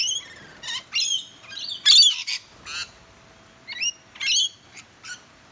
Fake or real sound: real